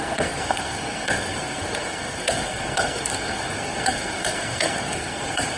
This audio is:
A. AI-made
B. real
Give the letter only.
A